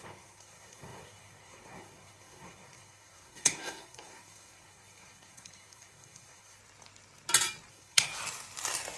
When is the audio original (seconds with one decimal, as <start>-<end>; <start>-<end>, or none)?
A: 6.6-7.7; 8.1-9.0